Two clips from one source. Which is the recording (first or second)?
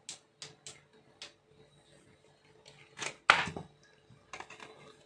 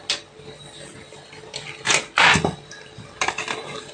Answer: first